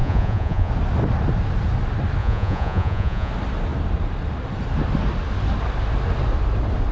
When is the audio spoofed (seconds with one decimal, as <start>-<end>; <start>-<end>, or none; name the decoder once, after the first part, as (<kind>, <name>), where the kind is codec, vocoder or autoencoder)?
0.0-0.7 (vocoder, Vocos); 2.2-3.3

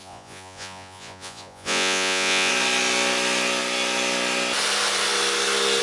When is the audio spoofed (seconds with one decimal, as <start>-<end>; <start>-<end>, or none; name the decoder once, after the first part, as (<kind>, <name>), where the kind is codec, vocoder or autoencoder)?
0.0-2.5 (vocoder, Vocos)

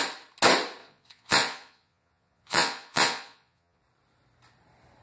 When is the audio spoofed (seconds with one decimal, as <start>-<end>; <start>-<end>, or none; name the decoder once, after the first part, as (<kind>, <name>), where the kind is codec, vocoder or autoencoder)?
0.8-3.8 (vocoder, Vocos)

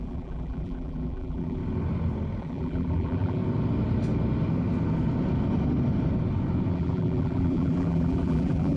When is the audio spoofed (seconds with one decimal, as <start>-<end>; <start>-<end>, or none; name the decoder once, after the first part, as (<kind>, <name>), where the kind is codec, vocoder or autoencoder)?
0.0-1.6 (vocoder, BigVGAN v2); 2.4-3.4; 6.7-8.8

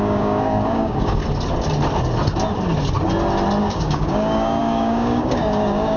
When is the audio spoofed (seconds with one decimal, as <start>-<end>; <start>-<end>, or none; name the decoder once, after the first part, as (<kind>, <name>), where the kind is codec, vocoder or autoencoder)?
0.0-1.2 (codec, DAC); 3.6-6.0